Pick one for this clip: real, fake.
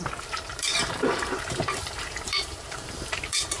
fake